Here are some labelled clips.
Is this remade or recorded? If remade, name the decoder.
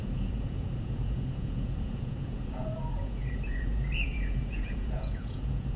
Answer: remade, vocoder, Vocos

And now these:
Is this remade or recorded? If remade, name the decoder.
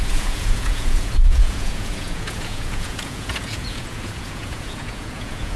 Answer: remade, vocoder, Vocos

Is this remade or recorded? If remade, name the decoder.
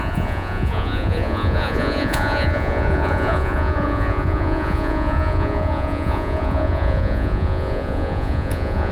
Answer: remade, vocoder, Vocos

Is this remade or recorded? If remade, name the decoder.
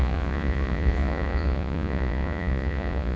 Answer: remade, vocoder, Vocos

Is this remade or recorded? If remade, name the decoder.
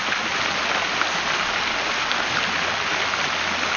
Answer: recorded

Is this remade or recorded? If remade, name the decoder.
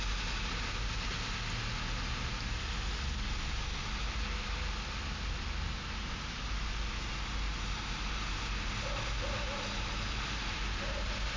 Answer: recorded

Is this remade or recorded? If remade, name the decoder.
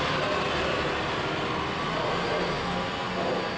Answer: recorded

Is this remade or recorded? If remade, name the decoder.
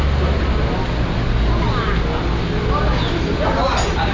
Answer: recorded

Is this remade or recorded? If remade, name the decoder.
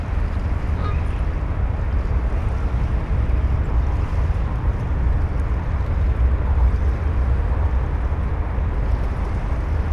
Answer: recorded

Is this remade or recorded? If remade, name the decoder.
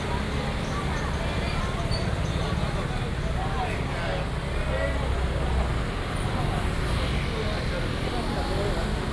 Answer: recorded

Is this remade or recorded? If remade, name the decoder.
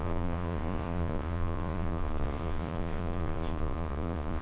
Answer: remade, vocoder, Vocos